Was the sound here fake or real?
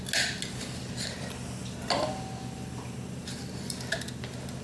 real